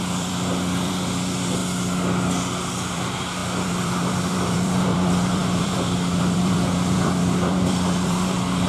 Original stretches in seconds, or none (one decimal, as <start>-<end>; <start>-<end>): 1.6-2.7